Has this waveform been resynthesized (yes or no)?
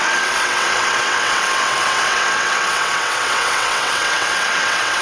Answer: yes